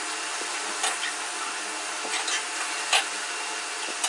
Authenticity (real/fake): real